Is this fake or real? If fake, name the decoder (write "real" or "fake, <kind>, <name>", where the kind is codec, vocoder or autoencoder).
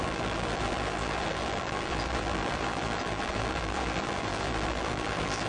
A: fake, vocoder, BigVGAN v2